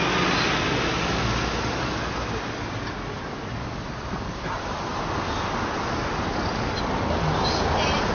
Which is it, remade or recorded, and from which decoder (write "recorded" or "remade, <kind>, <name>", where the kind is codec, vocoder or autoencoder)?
recorded